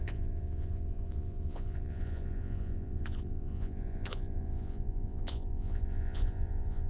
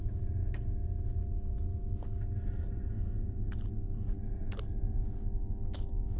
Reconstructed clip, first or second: first